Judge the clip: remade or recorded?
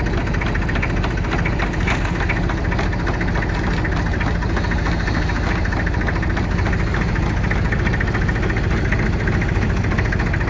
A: recorded